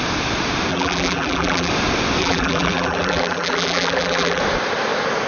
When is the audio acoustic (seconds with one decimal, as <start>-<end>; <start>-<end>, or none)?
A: 0.0-0.7; 1.7-2.2; 4.4-5.3